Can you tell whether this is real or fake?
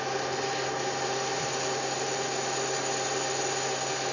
real